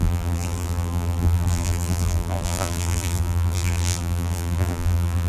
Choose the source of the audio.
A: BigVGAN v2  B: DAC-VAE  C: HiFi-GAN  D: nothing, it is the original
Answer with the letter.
A